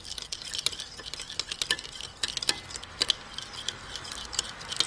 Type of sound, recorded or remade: recorded